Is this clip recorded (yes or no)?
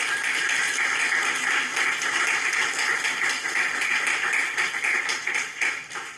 yes